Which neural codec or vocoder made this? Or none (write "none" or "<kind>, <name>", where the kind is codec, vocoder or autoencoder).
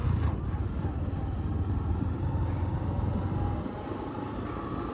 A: none